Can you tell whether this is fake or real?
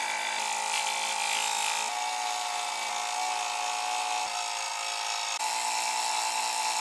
real